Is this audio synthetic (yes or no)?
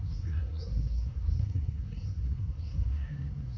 yes